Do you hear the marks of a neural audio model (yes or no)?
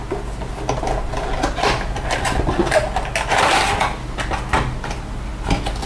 no